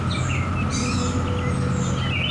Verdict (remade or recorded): recorded